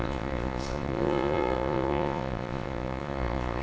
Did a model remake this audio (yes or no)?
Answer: yes